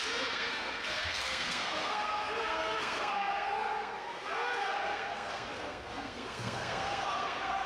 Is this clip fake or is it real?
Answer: fake